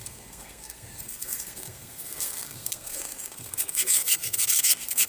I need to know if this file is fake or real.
fake